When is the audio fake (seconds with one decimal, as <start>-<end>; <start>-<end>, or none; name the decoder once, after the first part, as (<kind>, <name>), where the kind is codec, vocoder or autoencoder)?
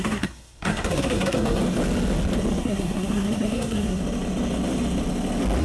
0.0-1.6 (codec, SNAC); 2.6-4.0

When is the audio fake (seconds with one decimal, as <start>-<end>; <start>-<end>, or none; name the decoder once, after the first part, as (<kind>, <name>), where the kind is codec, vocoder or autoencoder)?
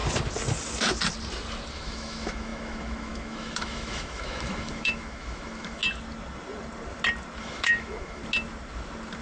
1.7-5.8 (autoencoder, DAC-VAE); 7.4-8.2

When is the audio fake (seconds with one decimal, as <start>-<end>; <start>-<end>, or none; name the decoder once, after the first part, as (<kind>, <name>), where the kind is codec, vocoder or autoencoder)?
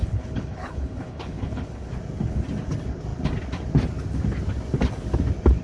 0.0-1.9 (codec, HILCodec)